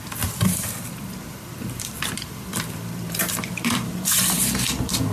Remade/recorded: remade